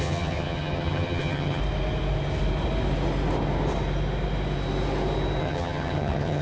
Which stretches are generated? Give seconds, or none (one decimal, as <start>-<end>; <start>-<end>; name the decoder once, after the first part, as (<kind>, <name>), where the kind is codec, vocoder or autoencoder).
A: 0.0-1.6 (vocoder, HiFi-GAN); 5.4-6.4